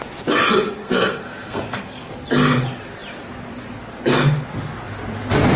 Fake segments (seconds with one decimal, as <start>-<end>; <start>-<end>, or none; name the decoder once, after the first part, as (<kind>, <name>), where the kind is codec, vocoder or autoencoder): 0.8-2.1 (codec, SNAC)